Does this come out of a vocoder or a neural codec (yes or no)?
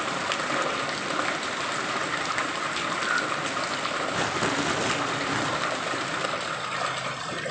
no